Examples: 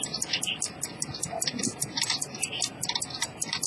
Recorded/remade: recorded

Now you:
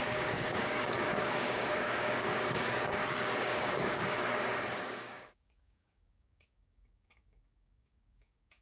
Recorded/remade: remade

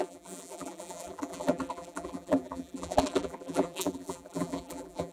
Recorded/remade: remade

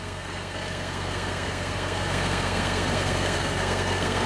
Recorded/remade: remade